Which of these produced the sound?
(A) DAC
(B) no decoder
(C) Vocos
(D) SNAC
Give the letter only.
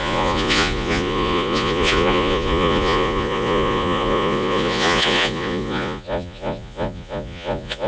C